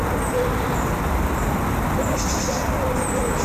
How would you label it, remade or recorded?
recorded